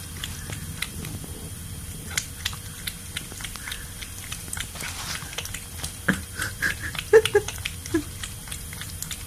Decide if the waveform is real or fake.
real